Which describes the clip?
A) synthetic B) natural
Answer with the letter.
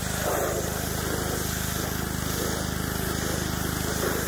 B